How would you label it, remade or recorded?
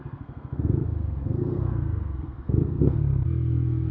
remade